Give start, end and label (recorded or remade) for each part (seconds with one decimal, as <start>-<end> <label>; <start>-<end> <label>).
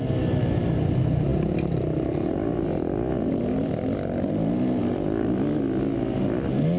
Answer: 0.0-6.8 recorded